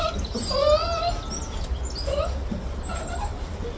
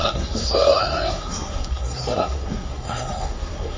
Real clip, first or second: first